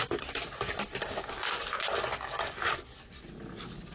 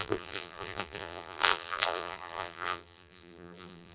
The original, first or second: first